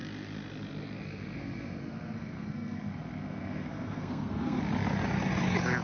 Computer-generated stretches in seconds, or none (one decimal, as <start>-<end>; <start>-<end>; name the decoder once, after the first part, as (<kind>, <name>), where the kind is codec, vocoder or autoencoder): 1.1-4.6 (codec, SNAC)